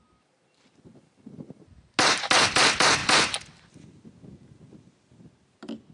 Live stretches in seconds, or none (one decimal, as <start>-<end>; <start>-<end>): 0.0-5.9